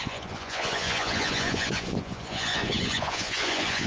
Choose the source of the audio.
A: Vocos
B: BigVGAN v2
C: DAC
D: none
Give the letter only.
A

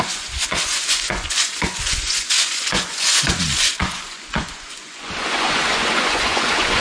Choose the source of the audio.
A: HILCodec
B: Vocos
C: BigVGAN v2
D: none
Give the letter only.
B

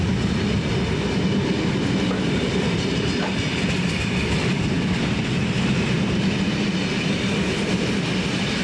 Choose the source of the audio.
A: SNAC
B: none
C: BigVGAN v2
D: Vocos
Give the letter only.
B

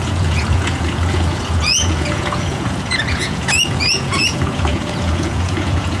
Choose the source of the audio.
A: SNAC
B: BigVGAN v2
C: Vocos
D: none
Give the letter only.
C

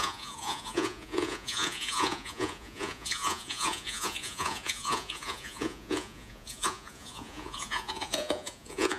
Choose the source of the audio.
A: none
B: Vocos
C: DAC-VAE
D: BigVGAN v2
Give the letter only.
B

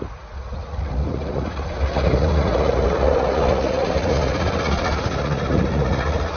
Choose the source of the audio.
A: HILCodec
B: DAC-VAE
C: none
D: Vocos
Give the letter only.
D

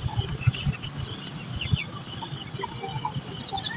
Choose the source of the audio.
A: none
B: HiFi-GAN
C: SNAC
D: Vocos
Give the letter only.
A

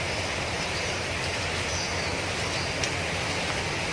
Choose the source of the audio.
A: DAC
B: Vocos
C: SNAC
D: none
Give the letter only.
D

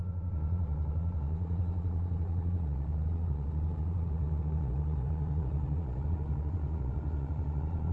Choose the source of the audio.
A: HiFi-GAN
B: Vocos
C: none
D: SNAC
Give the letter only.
B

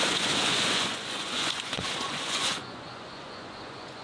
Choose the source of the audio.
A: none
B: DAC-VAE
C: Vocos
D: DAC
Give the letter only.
C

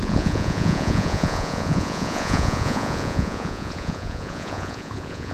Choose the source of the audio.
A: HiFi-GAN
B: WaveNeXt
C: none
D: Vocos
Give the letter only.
D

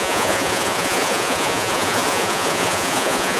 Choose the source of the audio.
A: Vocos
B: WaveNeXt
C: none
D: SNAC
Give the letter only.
A